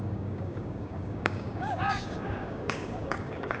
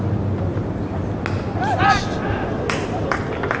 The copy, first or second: first